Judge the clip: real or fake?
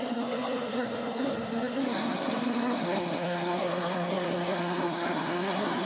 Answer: fake